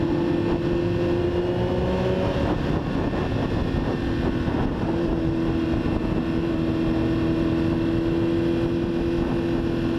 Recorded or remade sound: recorded